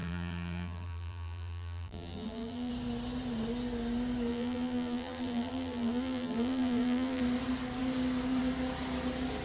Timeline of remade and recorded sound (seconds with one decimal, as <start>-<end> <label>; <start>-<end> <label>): 0.0-2.7 remade; 2.7-4.3 recorded; 4.3-7.2 remade; 7.2-9.4 recorded